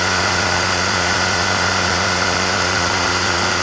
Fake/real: fake